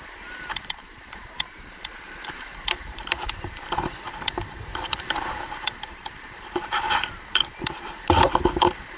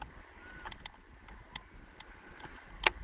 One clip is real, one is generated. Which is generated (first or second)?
first